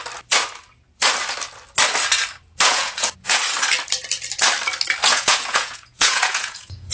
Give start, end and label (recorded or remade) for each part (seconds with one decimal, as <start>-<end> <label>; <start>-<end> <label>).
0.0-2.7 recorded; 2.7-3.4 remade; 3.4-5.0 recorded; 5.0-6.9 remade